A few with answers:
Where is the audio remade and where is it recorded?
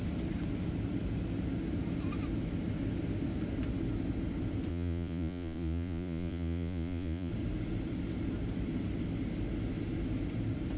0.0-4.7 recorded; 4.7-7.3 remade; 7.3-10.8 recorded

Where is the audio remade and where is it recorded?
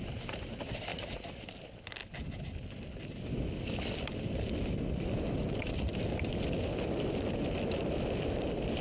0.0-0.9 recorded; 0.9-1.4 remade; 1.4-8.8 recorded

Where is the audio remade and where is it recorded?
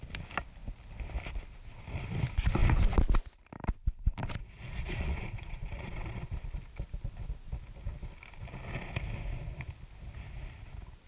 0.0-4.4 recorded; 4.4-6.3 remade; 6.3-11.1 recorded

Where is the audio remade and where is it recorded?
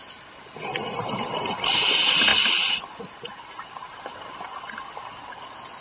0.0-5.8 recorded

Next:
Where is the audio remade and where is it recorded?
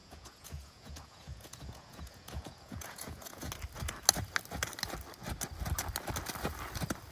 0.0-3.5 remade; 3.5-7.1 recorded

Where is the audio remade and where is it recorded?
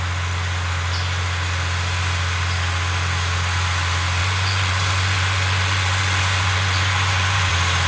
0.0-4.2 recorded; 4.2-7.5 remade; 7.5-7.9 recorded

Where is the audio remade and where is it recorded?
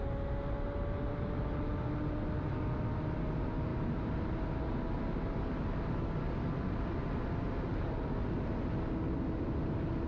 0.0-10.1 recorded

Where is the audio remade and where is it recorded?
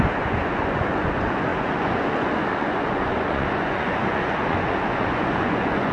0.0-5.9 remade